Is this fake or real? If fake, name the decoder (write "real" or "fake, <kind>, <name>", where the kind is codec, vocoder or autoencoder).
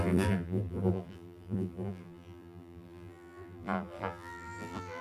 fake, vocoder, BigVGAN v2